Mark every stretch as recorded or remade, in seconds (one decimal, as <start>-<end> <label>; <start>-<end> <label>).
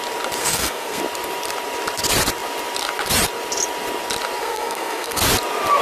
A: 0.0-0.4 recorded; 0.4-1.0 remade; 1.0-4.4 recorded; 4.4-5.2 remade; 5.2-5.8 recorded